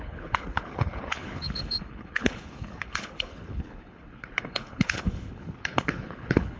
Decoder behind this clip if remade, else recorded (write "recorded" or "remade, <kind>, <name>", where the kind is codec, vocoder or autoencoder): remade, codec, HILCodec